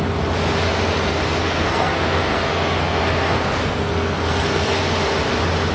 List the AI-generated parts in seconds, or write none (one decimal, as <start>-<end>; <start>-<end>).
1.4-4.8